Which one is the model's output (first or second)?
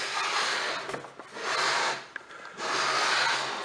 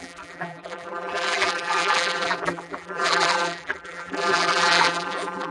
second